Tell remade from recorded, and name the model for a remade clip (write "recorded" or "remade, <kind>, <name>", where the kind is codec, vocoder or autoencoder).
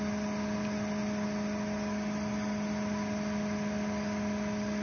recorded